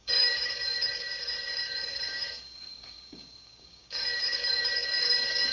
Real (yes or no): no